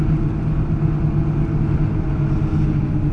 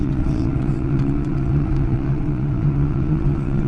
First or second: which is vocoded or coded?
second